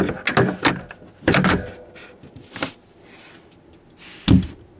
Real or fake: real